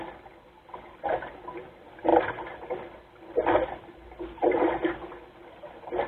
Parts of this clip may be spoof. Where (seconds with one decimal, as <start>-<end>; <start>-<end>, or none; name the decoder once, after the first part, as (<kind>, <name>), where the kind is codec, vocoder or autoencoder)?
none